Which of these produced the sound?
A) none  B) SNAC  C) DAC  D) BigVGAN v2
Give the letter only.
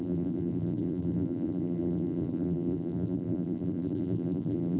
D